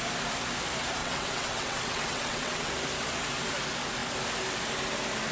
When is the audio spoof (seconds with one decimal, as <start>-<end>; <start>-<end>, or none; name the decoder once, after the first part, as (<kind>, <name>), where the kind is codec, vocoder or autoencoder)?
1.0-2.7 (vocoder, WaveNeXt)